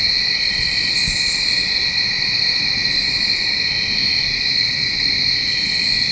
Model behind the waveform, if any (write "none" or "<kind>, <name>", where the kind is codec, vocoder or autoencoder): none